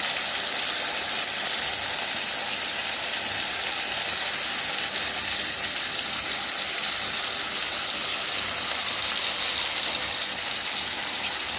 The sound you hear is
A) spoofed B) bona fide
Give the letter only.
B